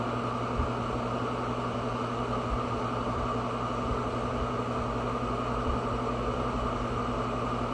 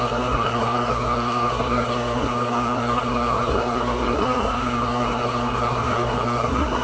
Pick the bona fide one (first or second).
first